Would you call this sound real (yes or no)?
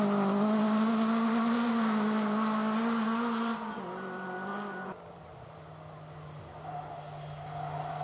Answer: yes